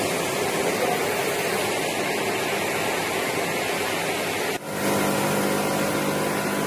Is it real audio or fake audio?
real